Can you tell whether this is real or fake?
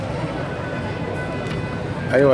real